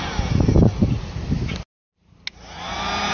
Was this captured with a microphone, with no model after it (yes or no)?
yes